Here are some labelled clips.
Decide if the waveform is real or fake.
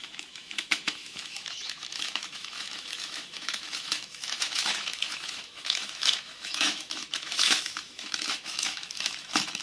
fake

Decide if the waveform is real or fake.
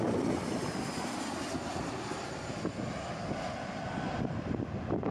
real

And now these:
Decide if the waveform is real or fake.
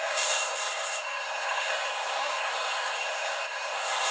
fake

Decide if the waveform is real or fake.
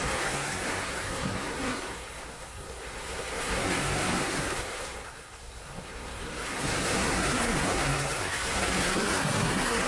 fake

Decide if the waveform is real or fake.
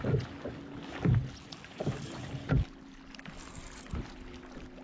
real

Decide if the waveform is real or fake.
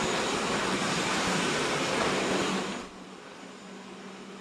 real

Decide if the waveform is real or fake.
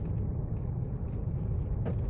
real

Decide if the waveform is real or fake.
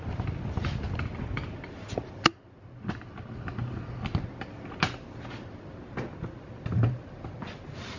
real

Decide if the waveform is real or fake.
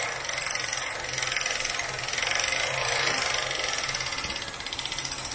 real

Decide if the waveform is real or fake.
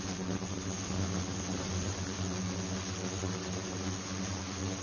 real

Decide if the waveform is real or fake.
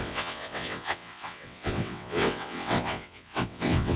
fake